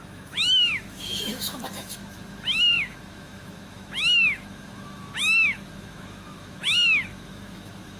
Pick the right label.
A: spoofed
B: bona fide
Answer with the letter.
A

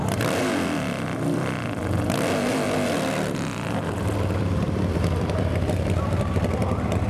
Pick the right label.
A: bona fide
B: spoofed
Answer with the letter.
B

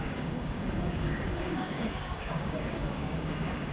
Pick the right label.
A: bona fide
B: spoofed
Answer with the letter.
B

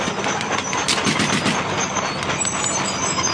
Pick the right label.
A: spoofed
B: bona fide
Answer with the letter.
B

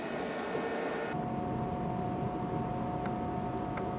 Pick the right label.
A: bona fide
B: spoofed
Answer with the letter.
A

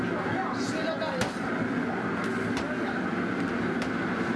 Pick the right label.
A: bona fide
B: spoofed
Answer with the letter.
A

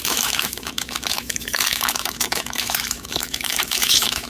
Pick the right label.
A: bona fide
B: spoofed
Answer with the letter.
B